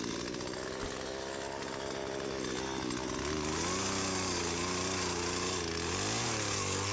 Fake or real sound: real